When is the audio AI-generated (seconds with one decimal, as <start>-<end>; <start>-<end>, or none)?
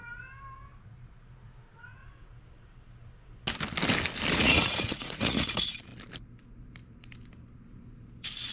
0.8-2.0; 4.3-5.9